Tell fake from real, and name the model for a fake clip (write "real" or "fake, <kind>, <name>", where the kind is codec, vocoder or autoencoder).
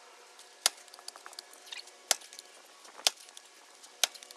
real